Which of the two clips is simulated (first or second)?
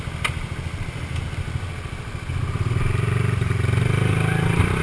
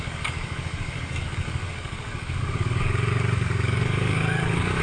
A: second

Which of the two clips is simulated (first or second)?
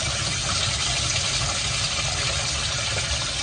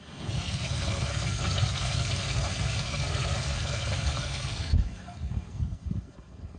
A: second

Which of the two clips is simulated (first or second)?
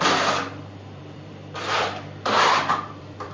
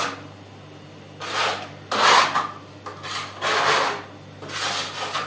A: first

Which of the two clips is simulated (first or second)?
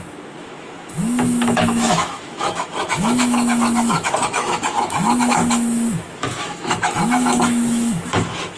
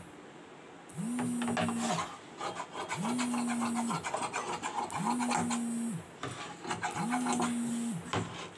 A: first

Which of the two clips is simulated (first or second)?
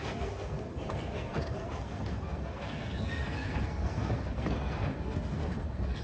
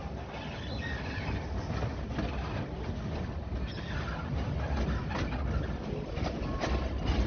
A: first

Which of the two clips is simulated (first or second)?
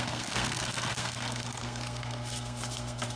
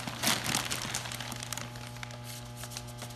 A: first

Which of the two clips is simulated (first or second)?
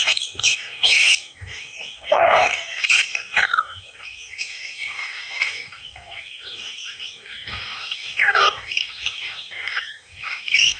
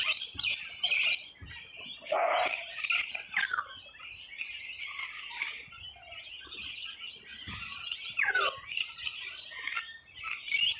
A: first